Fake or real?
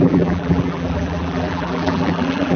fake